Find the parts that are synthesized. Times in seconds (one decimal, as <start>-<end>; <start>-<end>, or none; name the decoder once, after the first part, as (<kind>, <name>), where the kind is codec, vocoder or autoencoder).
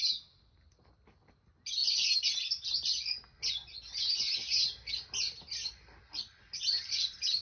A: none